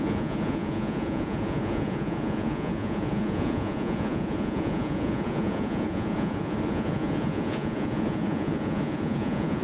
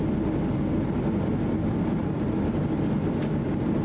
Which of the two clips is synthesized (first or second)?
first